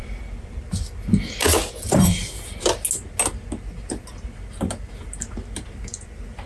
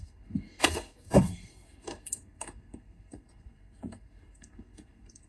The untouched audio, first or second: first